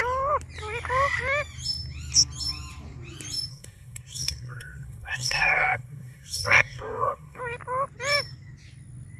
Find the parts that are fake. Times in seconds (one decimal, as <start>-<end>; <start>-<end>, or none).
3.5-7.4